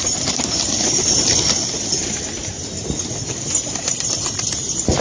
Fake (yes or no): no